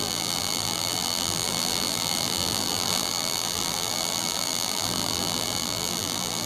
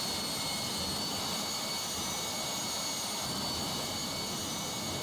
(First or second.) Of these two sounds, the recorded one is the second